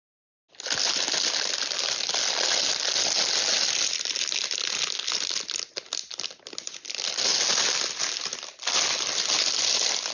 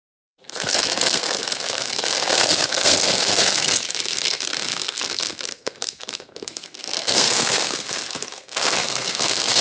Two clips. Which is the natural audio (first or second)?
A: first